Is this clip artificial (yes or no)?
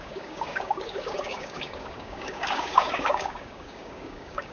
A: yes